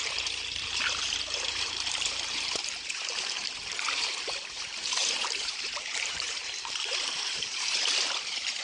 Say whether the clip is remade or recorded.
remade